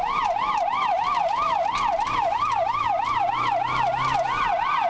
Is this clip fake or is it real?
real